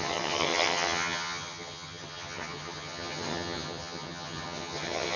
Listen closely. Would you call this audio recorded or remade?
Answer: remade